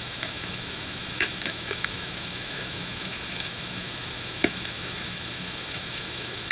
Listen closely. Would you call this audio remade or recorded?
remade